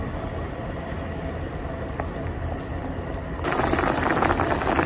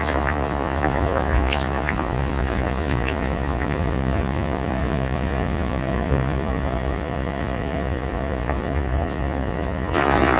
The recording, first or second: first